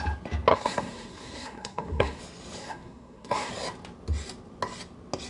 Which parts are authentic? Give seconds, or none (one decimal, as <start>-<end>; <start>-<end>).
0.0-0.5; 2.2-2.6; 3.5-5.3